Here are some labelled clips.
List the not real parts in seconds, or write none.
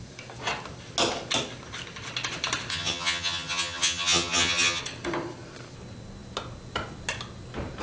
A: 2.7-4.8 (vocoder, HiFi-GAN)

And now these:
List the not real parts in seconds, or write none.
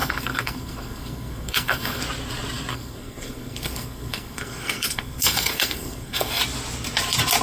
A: 0.0-2.0 (codec, SNAC); 2.7-6.4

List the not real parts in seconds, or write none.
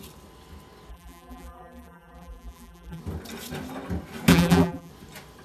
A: 0.9-3.0 (vocoder, BigVGAN v2); 4.3-4.9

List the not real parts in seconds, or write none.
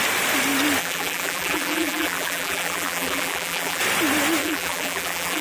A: 0.8-3.8 (vocoder, BigVGAN v2); 4.4-5.4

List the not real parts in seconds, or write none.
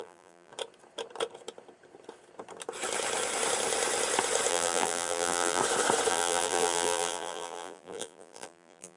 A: 0.0-0.5 (vocoder, BigVGAN v2); 4.5-5.6; 6.1-9.0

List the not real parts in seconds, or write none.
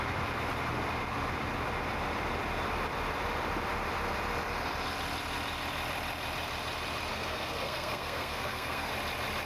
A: 7.1-8.9 (codec, SNAC)